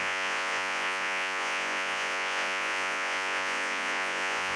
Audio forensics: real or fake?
fake